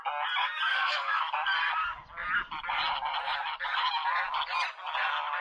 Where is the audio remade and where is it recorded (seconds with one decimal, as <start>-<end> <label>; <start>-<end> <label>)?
0.0-0.7 recorded; 0.7-1.2 remade; 1.2-5.4 recorded